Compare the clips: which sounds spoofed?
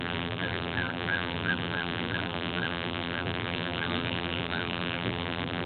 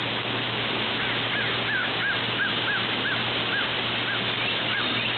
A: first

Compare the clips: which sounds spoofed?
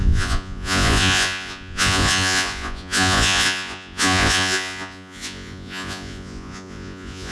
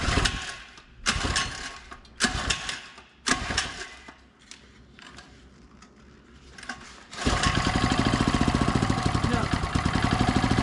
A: first